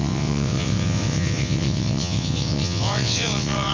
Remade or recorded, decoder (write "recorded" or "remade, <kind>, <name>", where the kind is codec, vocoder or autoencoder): remade, vocoder, WaveNeXt